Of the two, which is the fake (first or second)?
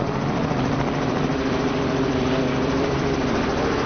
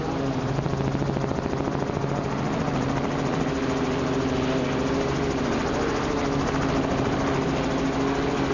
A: first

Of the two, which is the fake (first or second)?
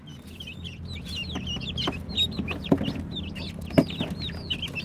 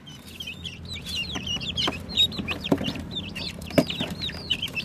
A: second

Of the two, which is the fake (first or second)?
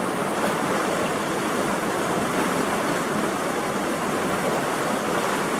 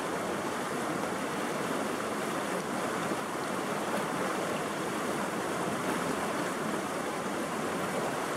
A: second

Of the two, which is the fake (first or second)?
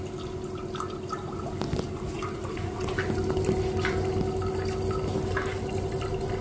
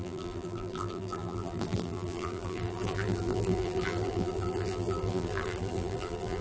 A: second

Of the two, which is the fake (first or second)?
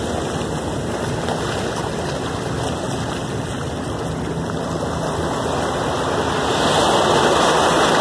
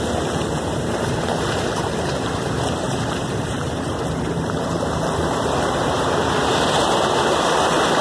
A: second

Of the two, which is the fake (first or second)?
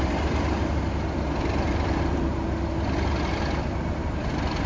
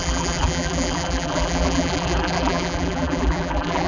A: second